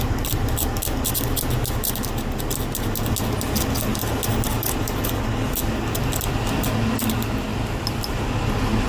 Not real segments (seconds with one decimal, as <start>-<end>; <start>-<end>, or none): none